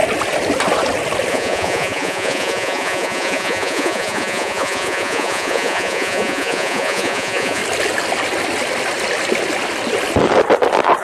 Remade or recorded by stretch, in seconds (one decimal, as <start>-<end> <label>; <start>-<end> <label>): 0.0-1.3 recorded; 1.3-7.6 remade; 7.6-11.0 recorded